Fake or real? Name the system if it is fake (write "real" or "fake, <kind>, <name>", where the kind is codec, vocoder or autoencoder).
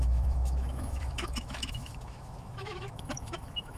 fake, autoencoder, DAC-VAE